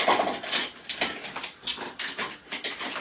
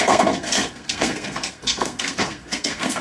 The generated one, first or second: second